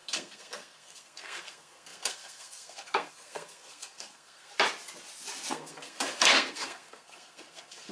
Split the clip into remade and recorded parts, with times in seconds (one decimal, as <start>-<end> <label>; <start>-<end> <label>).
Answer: 0.0-4.5 remade; 4.5-5.5 recorded; 5.5-7.9 remade